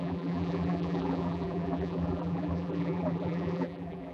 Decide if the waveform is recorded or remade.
remade